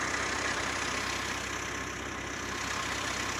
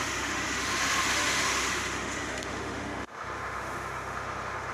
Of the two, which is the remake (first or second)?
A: second